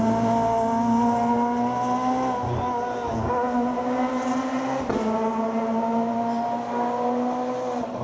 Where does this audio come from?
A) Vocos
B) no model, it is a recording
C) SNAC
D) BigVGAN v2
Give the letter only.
B